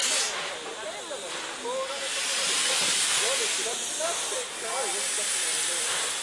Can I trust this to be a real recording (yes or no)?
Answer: yes